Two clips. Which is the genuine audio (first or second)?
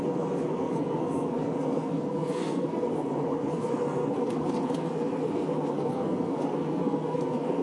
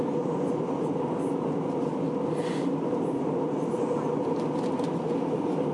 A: second